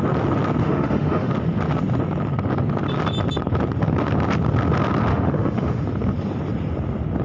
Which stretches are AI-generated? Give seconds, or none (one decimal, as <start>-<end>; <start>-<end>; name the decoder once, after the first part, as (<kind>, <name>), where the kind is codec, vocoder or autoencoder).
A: 0.6-1.3 (autoencoder, DAC-VAE); 5.1-5.8